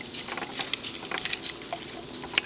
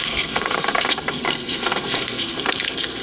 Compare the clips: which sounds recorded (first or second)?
first